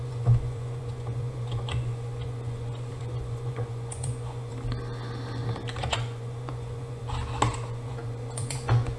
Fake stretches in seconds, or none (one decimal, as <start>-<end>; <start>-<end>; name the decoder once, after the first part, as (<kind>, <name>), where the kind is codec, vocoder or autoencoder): 0.0-4.5 (vocoder, Vocos); 5.8-7.0; 7.5-9.0